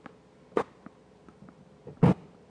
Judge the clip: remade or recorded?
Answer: recorded